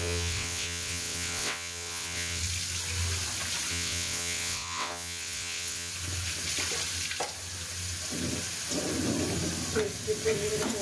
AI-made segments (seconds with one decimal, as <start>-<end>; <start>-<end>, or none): 0.0-2.4; 3.7-5.9